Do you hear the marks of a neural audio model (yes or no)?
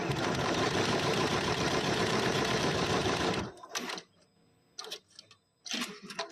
yes